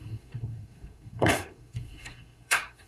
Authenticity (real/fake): fake